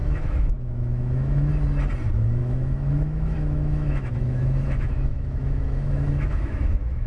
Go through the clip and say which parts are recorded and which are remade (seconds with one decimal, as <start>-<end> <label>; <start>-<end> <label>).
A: 0.0-1.5 remade; 1.5-2.4 recorded; 2.4-7.1 remade